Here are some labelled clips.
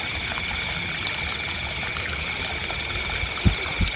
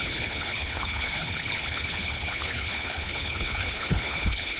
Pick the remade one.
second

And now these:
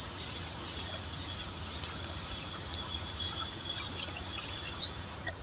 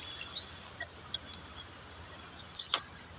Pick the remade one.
first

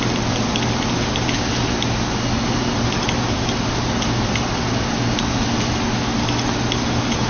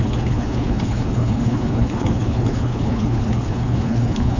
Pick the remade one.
second